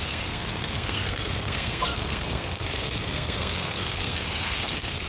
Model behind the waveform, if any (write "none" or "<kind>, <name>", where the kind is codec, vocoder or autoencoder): codec, SNAC